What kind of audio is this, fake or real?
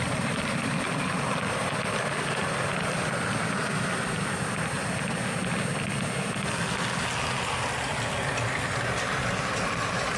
real